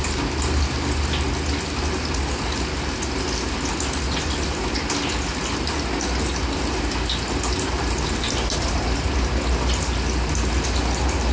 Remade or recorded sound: recorded